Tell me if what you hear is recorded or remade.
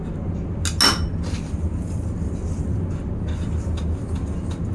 recorded